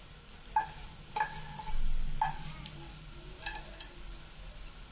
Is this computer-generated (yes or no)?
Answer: no